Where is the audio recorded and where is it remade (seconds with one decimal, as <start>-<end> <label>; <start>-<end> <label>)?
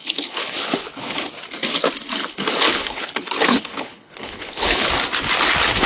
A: 0.0-1.3 remade; 1.3-2.2 recorded; 2.2-4.9 remade; 4.9-5.9 recorded